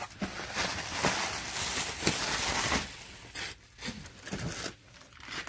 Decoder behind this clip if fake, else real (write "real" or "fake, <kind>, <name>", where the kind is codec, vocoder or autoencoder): real